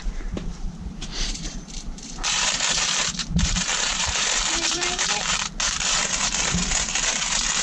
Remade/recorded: remade